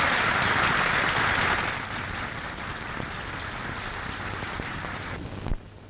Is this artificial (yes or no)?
no